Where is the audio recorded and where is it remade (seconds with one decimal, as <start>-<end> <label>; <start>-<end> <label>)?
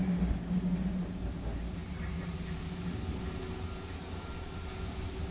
0.0-0.7 recorded; 0.7-1.3 remade; 1.3-5.3 recorded